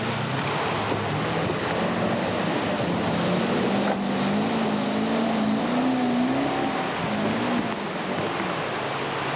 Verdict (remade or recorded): recorded